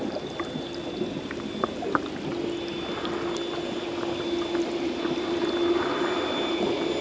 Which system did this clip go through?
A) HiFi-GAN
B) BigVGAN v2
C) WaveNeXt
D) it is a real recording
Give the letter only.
D